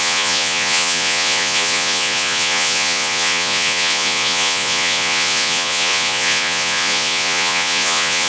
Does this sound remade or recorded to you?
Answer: remade